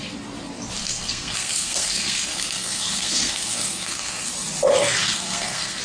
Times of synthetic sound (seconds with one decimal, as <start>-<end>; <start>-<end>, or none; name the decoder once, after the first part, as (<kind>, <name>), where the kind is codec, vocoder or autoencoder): 0.8-4.3 (codec, SNAC); 5.0-5.8